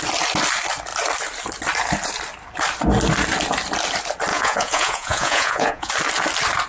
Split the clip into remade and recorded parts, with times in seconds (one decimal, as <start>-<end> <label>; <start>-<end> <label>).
0.0-4.3 recorded; 4.3-5.9 remade; 5.9-6.7 recorded